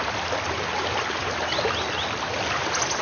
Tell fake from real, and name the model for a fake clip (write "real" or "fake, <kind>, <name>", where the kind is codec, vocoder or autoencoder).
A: real